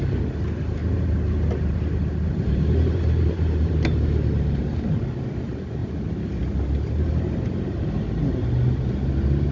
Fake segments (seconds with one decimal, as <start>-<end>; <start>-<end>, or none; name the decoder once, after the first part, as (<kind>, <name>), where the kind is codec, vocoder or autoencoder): 0.8-4.8 (vocoder, BigVGAN v2)